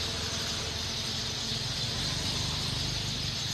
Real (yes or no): yes